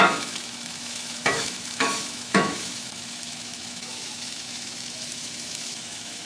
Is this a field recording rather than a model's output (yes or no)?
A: no